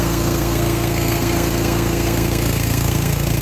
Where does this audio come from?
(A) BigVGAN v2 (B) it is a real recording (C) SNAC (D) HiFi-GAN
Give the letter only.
C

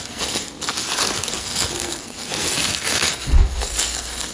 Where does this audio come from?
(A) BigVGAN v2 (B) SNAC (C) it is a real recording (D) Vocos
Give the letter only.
B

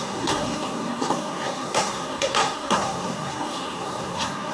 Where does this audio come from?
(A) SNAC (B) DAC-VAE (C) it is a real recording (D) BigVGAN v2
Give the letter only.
A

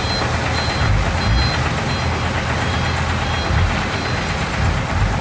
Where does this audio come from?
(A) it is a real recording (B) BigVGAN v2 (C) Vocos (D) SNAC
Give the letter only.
A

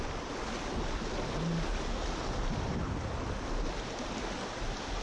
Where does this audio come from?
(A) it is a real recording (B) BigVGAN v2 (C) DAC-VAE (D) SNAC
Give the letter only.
A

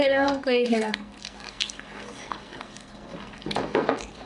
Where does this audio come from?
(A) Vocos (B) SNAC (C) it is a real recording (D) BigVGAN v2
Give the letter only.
B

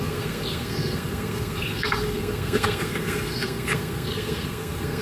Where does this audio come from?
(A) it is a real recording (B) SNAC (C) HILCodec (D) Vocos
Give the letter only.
B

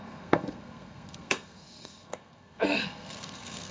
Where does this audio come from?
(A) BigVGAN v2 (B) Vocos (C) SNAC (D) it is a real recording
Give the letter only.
C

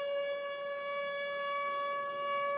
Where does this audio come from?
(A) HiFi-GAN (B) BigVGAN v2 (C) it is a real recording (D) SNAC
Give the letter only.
C